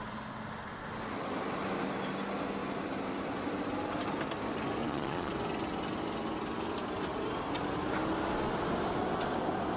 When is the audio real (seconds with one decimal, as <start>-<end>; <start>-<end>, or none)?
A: 0.0-4.8; 5.3-9.8